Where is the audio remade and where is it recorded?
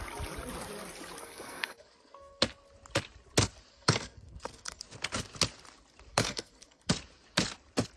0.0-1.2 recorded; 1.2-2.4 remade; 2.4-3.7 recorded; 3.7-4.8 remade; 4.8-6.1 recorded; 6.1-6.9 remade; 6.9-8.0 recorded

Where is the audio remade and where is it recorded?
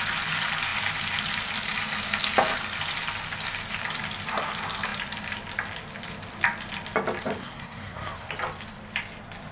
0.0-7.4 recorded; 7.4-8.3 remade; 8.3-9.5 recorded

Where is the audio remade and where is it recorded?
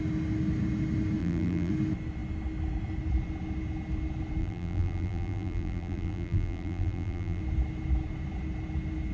0.0-1.2 recorded; 1.2-1.7 remade; 1.7-4.4 recorded; 4.4-7.4 remade; 7.4-9.1 recorded